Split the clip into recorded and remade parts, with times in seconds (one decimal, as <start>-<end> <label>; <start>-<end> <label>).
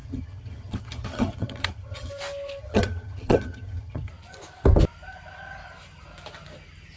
0.0-2.1 remade; 2.1-2.6 recorded; 2.6-4.1 remade; 4.1-7.0 recorded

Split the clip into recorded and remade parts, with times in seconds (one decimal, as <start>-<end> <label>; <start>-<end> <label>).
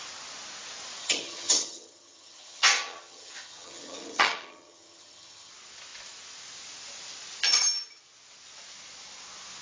0.0-1.0 recorded; 1.0-5.5 remade; 5.5-9.6 recorded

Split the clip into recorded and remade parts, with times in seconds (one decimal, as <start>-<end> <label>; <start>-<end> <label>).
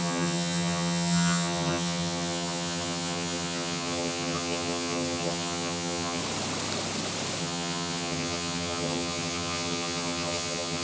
0.0-6.2 remade; 6.2-7.4 recorded; 7.4-10.8 remade